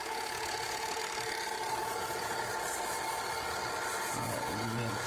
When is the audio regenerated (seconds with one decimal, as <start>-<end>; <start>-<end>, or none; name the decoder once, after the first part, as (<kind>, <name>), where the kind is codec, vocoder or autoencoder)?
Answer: 0.0-1.0 (vocoder, Vocos); 1.8-2.5; 4.0-5.1